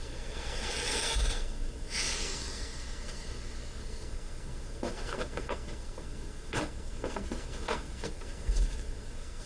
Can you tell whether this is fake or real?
fake